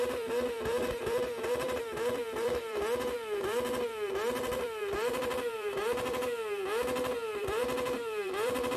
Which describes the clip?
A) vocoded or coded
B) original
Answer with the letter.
A